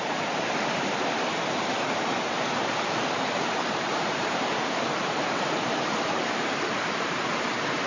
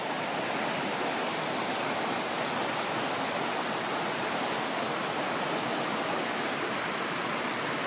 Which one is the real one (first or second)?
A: second